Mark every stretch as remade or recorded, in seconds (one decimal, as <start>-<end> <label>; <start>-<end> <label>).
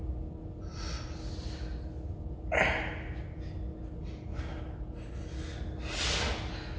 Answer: 0.0-6.8 recorded